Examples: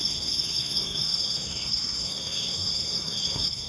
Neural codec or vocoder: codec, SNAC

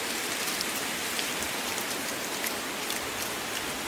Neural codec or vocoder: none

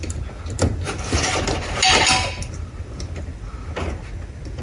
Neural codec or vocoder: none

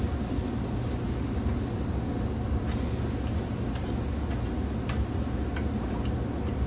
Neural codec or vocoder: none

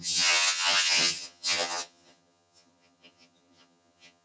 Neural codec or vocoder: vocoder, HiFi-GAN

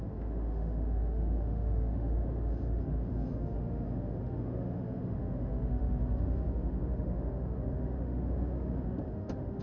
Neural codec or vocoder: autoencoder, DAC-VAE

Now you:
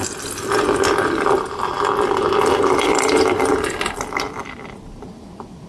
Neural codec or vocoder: vocoder, BigVGAN v2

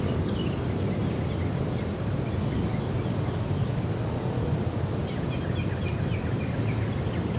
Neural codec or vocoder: none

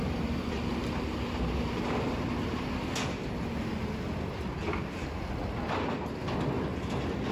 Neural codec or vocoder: none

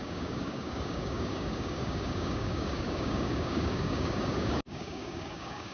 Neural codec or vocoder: codec, DAC